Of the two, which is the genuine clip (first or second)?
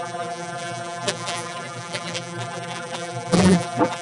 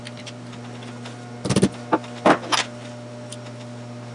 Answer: second